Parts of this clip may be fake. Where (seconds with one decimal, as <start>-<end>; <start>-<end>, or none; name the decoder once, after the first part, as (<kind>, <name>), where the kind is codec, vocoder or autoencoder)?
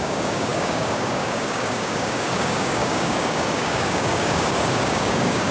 0.0-5.5 (codec, DAC)